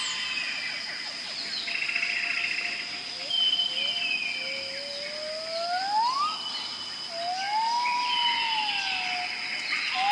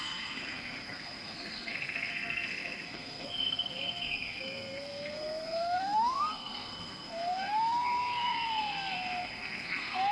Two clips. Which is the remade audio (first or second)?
second